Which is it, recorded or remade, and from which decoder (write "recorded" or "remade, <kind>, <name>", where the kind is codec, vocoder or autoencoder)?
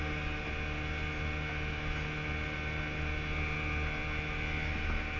recorded